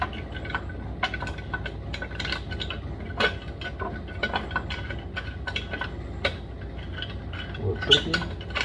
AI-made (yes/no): no